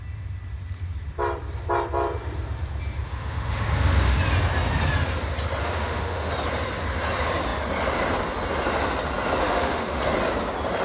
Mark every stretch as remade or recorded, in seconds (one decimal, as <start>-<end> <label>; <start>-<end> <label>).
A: 0.0-3.1 recorded; 3.1-4.2 remade; 4.2-5.6 recorded; 5.6-6.3 remade; 6.3-9.4 recorded; 9.4-10.0 remade; 10.0-10.8 recorded